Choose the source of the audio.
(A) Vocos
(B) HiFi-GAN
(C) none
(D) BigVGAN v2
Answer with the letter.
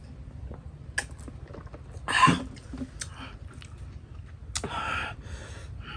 C